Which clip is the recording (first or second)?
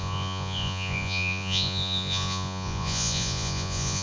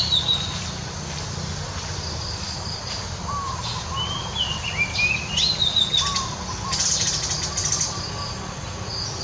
second